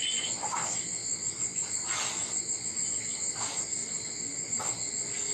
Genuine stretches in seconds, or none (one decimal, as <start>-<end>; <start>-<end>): 0.0-5.3